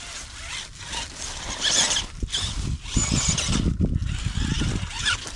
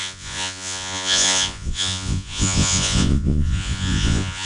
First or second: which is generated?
second